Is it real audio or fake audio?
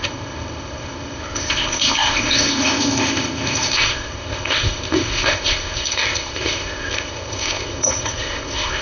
fake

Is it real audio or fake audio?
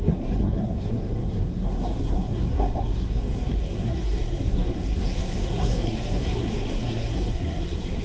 fake